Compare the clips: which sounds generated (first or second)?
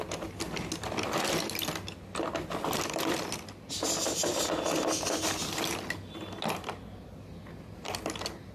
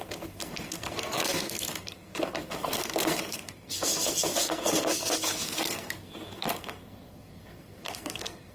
second